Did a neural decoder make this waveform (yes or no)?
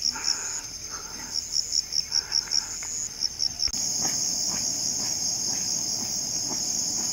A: no